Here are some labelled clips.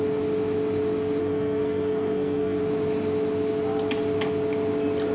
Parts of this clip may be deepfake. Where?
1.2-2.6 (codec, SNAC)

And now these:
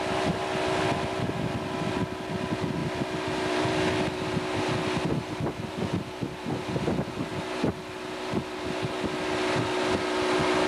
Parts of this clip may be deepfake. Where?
2.8-3.6 (vocoder, BigVGAN v2)

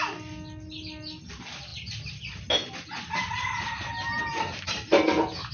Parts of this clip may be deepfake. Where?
none